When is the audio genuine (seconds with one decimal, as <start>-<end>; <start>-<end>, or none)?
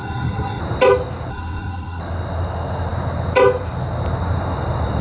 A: 0.6-1.3; 2.0-5.0